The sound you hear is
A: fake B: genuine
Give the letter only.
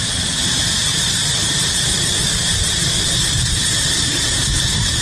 A